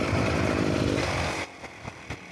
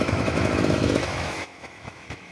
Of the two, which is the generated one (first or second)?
second